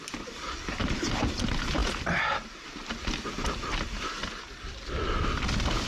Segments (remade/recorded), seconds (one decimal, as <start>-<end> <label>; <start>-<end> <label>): 0.0-5.9 recorded